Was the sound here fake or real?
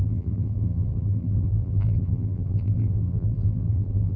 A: fake